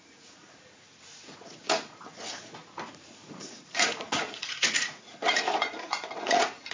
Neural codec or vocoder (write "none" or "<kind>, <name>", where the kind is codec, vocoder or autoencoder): vocoder, Vocos